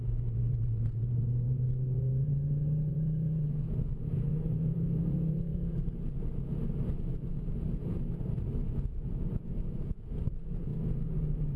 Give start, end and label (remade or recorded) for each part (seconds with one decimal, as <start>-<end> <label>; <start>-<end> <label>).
0.0-2.3 remade; 2.3-2.9 recorded; 2.9-11.6 remade